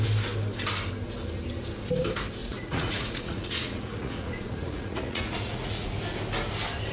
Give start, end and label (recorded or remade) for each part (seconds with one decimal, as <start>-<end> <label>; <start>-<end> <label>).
0.0-2.4 recorded; 2.4-5.9 remade; 5.9-6.9 recorded